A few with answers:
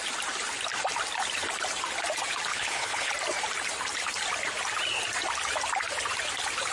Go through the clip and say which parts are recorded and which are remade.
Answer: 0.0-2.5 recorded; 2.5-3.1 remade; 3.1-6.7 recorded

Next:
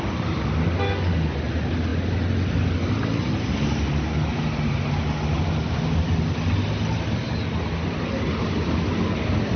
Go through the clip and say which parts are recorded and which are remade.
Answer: 0.0-9.6 recorded